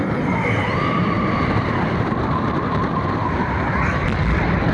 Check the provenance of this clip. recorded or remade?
remade